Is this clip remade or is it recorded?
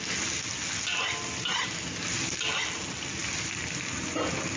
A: recorded